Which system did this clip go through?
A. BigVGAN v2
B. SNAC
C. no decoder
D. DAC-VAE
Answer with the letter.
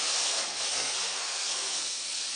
B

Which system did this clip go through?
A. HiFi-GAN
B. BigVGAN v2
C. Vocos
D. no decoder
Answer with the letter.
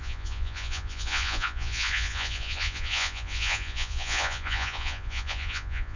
C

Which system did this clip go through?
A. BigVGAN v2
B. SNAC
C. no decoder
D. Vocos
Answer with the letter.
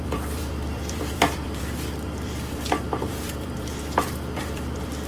A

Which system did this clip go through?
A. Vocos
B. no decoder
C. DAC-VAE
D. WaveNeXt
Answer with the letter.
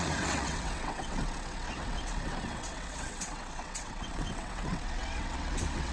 D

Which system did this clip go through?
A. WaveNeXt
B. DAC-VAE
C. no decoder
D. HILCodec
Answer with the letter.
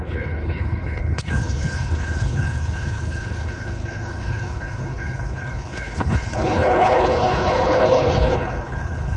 D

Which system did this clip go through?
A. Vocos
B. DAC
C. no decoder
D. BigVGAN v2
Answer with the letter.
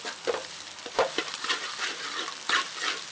C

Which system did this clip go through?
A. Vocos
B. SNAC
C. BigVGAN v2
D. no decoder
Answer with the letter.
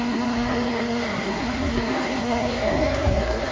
B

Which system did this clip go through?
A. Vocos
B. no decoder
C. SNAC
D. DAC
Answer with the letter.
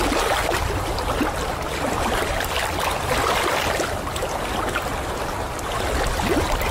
B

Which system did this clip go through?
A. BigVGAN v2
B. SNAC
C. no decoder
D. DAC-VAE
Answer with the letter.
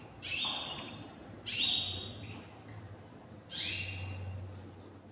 C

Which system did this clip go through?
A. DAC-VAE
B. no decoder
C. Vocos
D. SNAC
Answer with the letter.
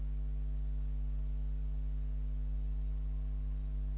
B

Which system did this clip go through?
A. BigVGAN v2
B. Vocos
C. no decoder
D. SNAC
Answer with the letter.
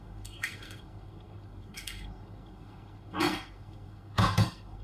D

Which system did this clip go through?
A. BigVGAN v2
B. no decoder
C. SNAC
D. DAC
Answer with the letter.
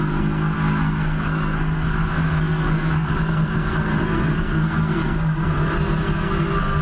C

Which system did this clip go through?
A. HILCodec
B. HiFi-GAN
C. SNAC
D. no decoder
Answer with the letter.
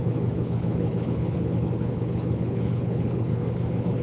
A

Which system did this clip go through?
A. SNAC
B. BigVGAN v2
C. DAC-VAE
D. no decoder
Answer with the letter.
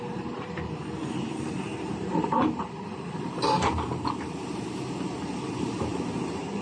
B